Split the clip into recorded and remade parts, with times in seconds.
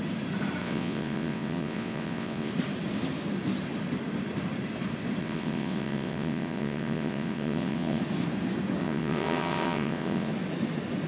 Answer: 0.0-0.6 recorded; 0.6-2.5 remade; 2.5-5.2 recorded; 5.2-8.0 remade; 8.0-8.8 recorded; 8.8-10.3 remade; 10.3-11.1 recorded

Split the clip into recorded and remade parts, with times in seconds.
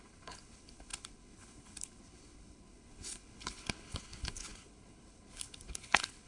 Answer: 0.0-6.3 remade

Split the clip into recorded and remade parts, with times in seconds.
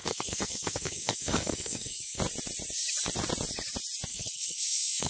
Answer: 0.0-2.2 remade; 2.2-4.1 recorded; 4.1-5.1 remade